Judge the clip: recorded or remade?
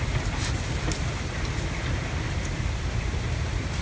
recorded